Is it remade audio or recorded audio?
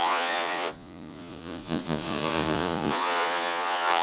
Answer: remade